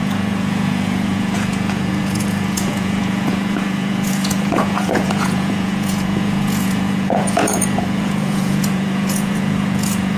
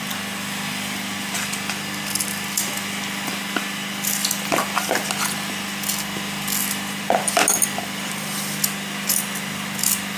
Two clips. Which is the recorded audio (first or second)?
second